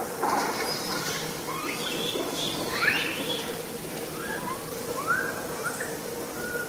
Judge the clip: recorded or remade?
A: recorded